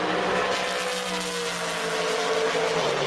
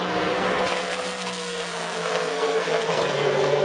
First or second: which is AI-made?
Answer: second